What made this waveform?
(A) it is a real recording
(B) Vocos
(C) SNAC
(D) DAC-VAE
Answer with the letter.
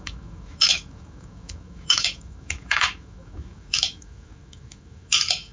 D